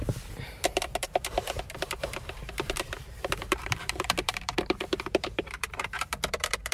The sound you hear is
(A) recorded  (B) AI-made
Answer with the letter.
B